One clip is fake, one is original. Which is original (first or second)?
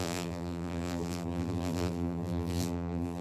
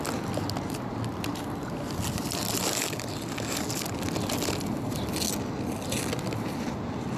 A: second